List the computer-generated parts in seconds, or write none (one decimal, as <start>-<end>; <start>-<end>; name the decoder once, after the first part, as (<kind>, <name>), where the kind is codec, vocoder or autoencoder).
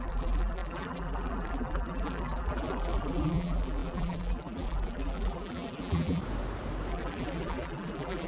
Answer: 0.0-6.2 (vocoder, BigVGAN v2); 6.9-8.3